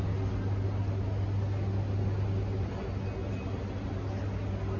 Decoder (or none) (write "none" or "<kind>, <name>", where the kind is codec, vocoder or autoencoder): none